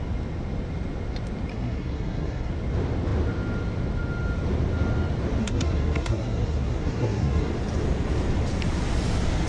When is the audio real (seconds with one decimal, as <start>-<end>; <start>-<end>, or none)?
0.0-1.5; 2.5-5.4; 7.5-9.5